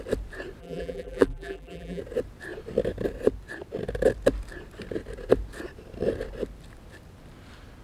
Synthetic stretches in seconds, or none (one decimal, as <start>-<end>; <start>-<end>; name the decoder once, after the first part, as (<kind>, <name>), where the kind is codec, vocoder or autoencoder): 0.6-2.0 (vocoder, BigVGAN v2)